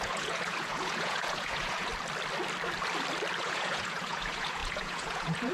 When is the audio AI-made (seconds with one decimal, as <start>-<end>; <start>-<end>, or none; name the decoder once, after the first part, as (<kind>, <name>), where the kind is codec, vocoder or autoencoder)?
0.0-1.9 (vocoder, Vocos); 3.4-5.5

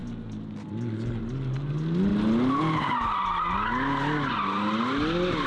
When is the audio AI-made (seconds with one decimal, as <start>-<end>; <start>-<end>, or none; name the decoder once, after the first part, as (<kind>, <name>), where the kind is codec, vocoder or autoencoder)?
none

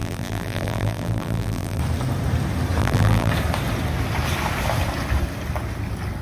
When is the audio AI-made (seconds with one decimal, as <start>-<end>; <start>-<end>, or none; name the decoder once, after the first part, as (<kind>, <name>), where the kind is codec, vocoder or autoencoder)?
0.0-1.8 (vocoder, BigVGAN v2); 2.8-3.3

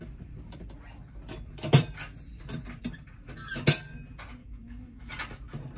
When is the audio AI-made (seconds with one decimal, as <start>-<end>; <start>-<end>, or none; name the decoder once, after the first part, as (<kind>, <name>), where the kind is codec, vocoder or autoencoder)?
4.4-5.1 (autoencoder, DAC-VAE)

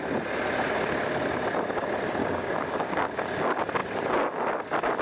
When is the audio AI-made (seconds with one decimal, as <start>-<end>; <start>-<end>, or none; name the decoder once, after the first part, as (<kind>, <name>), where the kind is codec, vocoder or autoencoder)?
2.2-3.4 (codec, DAC)